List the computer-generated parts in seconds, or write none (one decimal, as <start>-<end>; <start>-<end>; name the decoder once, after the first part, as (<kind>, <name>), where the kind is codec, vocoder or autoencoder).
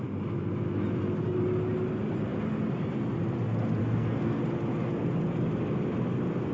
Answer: 3.8-4.4 (codec, SNAC)